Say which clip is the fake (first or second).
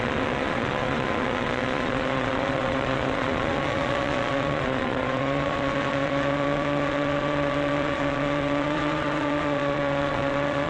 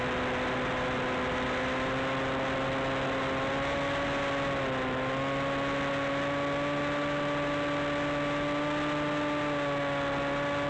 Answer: first